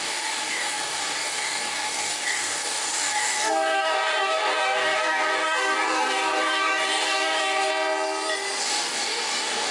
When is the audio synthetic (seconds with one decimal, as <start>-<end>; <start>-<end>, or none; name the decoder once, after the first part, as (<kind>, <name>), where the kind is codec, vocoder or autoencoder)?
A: 0.0-7.7 (codec, DAC); 8.6-9.7